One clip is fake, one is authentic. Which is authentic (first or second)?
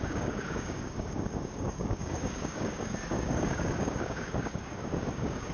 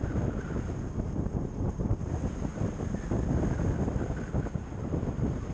second